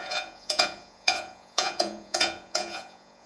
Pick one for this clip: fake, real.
fake